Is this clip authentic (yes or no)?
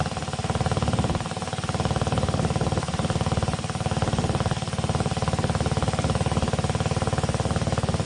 yes